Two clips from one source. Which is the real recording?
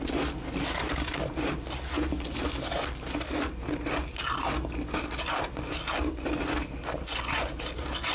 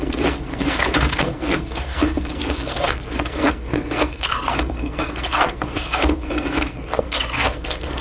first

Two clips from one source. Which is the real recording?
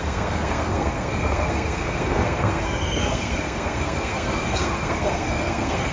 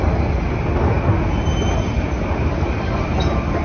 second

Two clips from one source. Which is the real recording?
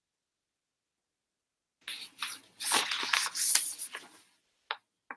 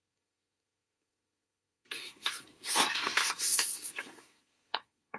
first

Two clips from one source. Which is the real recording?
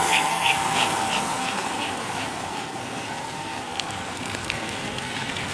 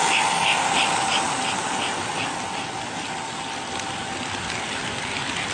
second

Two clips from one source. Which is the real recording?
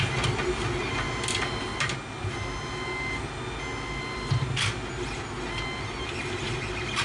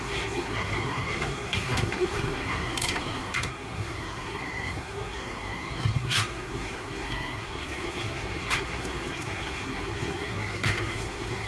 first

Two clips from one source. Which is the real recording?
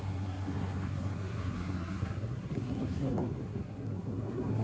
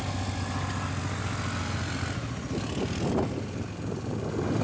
second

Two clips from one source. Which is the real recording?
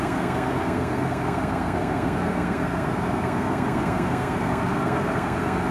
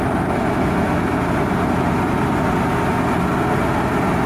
second